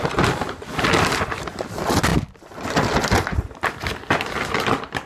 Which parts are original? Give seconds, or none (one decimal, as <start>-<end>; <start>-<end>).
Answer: 0.0-5.1